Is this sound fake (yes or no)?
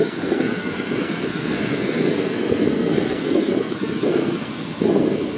yes